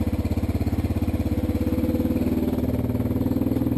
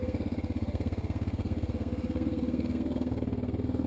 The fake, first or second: second